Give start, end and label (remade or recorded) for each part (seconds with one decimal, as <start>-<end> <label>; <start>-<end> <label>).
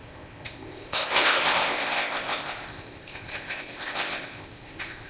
0.0-5.1 remade